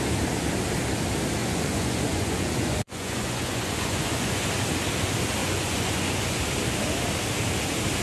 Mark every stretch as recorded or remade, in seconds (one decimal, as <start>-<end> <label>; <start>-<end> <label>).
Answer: 0.0-1.4 recorded; 1.4-4.5 remade; 4.5-5.4 recorded; 5.4-6.4 remade; 6.4-8.0 recorded